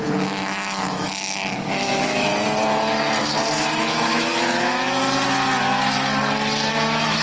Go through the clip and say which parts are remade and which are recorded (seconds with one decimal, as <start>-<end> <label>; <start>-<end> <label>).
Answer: 0.0-2.3 remade; 2.3-3.8 recorded; 3.8-5.0 remade; 5.0-6.7 recorded; 6.7-7.2 remade